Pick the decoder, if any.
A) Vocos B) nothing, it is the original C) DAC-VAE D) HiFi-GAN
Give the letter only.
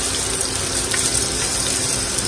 B